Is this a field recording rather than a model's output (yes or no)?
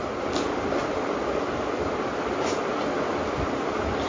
yes